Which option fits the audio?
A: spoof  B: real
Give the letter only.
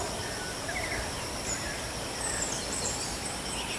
B